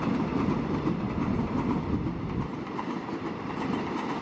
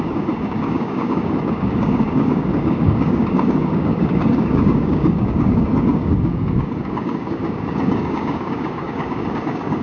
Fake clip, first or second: second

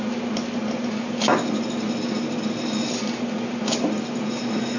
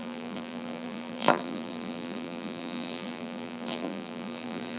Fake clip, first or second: second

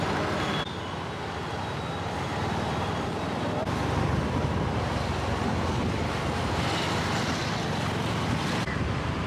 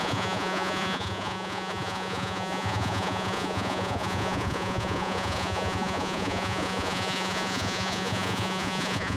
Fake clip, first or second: second